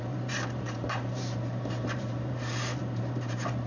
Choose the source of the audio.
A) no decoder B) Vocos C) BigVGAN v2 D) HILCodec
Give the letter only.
C